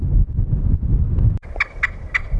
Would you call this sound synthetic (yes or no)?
no